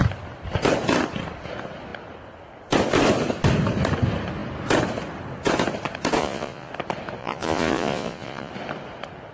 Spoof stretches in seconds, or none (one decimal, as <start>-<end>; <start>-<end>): 6.2-6.7; 7.2-8.5